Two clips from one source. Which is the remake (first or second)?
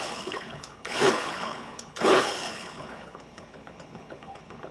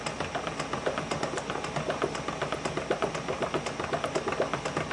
first